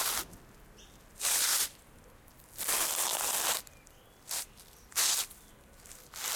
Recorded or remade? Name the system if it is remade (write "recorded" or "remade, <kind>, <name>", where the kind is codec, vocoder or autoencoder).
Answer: recorded